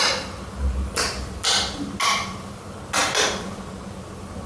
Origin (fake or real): real